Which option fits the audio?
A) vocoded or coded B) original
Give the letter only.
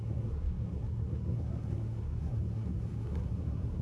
A